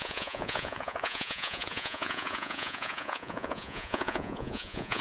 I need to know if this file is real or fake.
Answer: fake